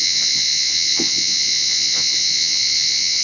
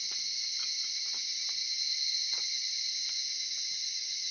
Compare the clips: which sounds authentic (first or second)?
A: second